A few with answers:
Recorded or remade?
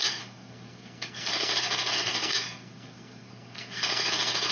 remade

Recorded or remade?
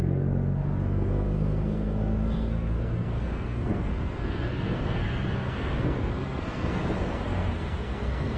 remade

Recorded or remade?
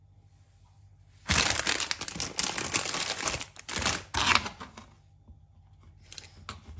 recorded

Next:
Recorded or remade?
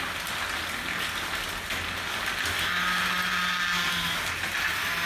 recorded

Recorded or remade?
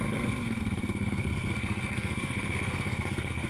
remade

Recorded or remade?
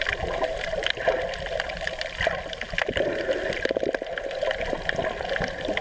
recorded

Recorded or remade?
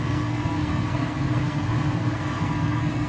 remade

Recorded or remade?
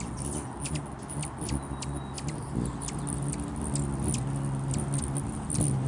recorded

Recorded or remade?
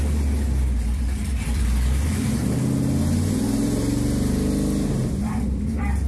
recorded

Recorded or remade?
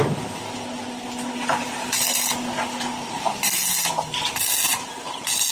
recorded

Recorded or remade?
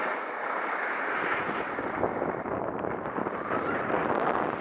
recorded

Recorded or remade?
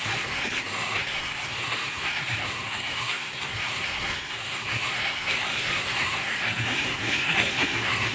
remade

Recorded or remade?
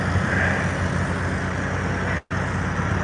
recorded